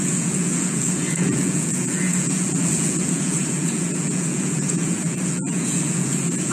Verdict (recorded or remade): remade